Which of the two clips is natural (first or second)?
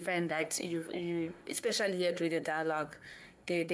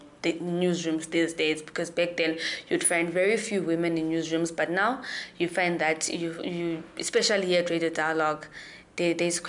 second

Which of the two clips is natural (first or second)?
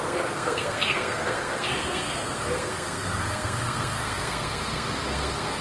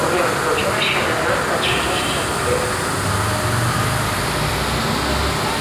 second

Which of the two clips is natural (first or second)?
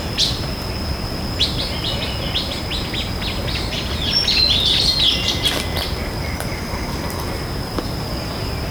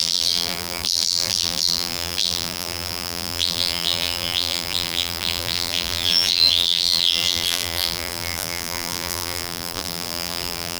first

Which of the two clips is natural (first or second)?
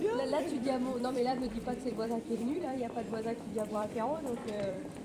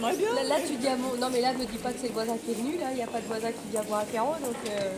second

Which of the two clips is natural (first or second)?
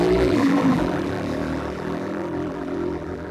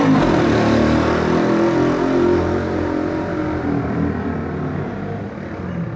second